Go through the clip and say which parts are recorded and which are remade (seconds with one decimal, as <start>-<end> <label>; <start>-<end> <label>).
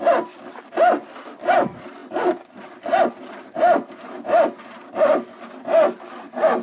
0.0-6.6 recorded